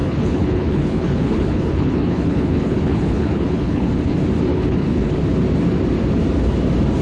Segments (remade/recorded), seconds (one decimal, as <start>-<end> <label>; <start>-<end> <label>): 0.0-3.9 remade; 3.9-4.5 recorded; 4.5-5.2 remade; 5.2-7.0 recorded

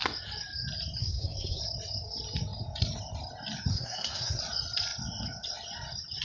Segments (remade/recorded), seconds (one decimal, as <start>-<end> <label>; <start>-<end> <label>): 0.0-1.0 recorded; 1.0-1.6 remade; 1.6-3.7 recorded; 3.7-4.4 remade; 4.4-6.2 recorded

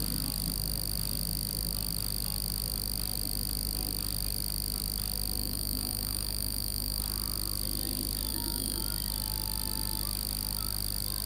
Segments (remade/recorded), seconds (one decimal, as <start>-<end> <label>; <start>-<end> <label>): 0.0-5.4 recorded; 5.4-7.0 remade; 7.0-8.3 recorded; 8.3-8.8 remade; 8.8-11.3 recorded